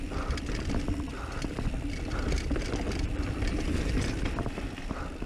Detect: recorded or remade remade